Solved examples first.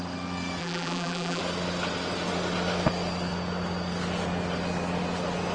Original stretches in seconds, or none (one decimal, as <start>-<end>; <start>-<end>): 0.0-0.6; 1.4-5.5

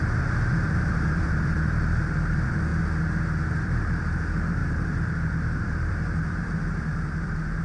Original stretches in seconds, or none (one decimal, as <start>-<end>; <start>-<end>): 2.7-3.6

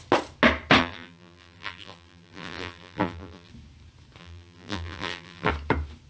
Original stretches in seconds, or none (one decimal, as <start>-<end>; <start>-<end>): 0.0-0.8; 3.5-4.2; 5.5-6.1

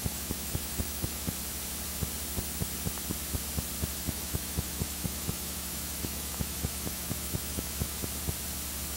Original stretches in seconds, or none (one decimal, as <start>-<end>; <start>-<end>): 1.3-3.9; 8.0-9.0

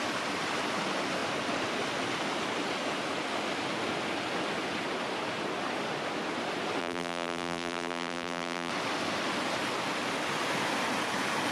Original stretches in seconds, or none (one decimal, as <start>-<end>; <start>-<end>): 0.0-6.8; 8.7-11.5

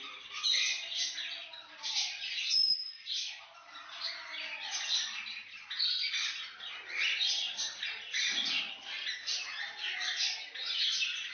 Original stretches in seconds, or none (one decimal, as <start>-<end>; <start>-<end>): 0.0-11.3

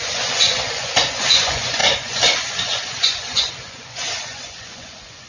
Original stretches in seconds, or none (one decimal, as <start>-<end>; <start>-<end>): none